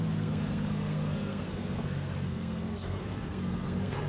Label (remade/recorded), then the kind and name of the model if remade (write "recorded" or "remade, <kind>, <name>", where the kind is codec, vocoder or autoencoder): remade, codec, SNAC